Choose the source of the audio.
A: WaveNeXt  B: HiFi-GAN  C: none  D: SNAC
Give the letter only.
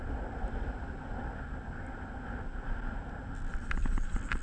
C